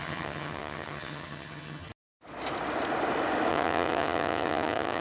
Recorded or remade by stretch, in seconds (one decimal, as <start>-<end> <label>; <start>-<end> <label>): 0.0-1.9 remade; 1.9-3.5 recorded; 3.5-5.0 remade